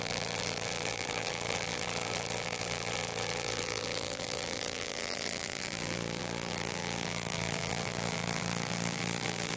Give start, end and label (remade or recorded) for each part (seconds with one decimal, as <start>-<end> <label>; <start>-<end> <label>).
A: 0.0-9.6 remade